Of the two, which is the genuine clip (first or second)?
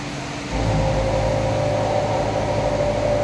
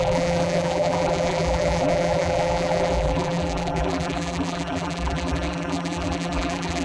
first